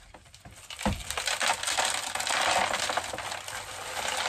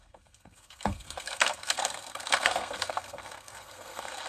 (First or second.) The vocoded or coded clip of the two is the second